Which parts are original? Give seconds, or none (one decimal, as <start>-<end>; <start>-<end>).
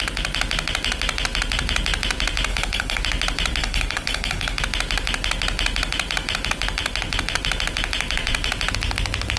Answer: 0.0-2.5; 3.0-3.6; 4.6-9.4